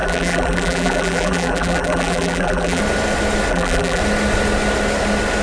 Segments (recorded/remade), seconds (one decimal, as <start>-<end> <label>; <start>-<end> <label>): 0.0-2.8 remade; 2.8-3.5 recorded; 3.5-4.0 remade; 4.0-5.4 recorded